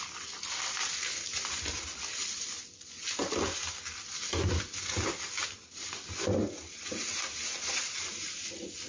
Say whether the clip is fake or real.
real